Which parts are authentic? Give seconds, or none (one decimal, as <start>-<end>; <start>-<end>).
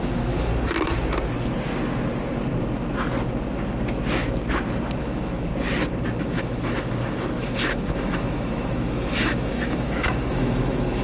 0.5-5.0; 5.5-6.2